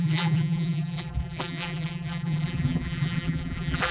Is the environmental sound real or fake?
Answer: fake